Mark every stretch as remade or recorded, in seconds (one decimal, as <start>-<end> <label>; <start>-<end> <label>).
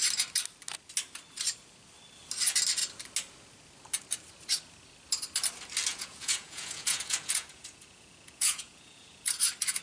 0.0-5.9 recorded; 5.9-9.3 remade; 9.3-9.8 recorded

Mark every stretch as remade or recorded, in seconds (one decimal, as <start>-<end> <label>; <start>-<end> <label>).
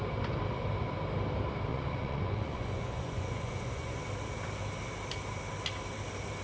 0.0-1.7 recorded; 1.7-4.0 remade; 4.0-6.4 recorded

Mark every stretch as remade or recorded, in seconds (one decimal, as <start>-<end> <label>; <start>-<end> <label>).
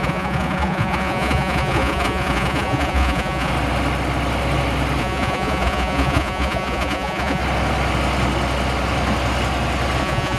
0.0-3.5 remade; 3.5-5.0 recorded; 5.0-7.4 remade; 7.4-10.0 recorded; 10.0-10.4 remade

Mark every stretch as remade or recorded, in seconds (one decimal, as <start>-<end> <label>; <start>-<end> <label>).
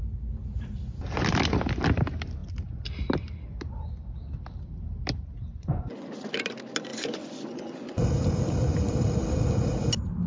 0.0-5.5 recorded; 5.5-6.1 remade; 6.1-6.9 recorded; 6.9-8.1 remade; 8.1-10.3 recorded